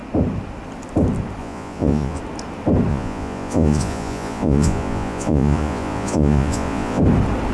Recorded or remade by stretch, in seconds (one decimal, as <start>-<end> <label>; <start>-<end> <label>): 0.0-1.4 recorded; 1.4-2.2 remade; 2.2-2.9 recorded; 2.9-7.0 remade; 7.0-7.5 recorded